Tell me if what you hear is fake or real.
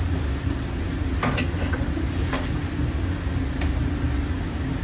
real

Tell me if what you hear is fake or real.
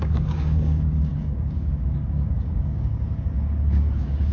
fake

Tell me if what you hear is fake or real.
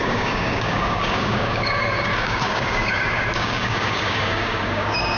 fake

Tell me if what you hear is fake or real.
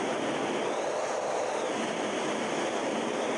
real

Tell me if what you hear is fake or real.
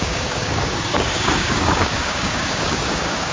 fake